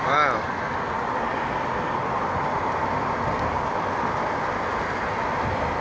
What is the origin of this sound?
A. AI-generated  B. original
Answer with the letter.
B